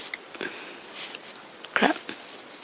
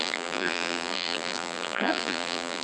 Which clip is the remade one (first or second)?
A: second